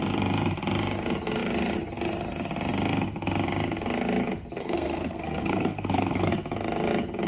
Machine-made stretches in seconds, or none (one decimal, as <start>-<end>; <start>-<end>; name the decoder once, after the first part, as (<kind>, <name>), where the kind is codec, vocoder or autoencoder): 4.6-6.3 (codec, SNAC)